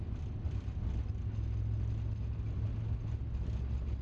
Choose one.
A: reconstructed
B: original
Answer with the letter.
B